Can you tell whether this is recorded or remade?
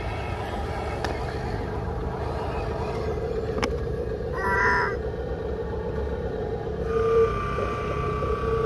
recorded